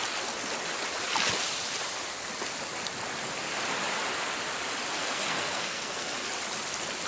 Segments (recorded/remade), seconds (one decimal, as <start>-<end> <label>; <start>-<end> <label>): 0.0-5.0 recorded; 5.0-6.3 remade; 6.3-7.1 recorded